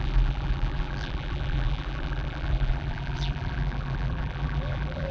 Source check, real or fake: fake